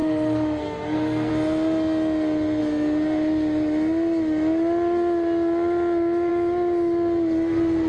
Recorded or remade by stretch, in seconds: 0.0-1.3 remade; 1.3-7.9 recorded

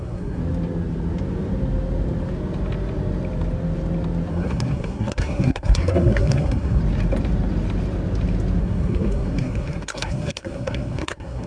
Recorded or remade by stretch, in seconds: 0.0-0.4 remade; 0.4-4.3 recorded; 4.3-6.8 remade; 6.8-8.6 recorded; 8.6-11.5 remade